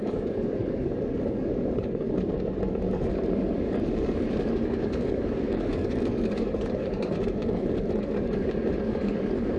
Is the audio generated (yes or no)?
yes